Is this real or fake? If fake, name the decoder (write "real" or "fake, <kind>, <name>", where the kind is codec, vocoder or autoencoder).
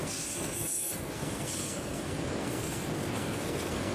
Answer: fake, codec, SNAC